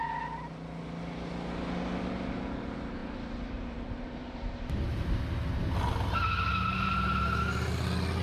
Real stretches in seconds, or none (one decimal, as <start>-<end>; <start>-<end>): 0.0-3.0; 5.1-8.2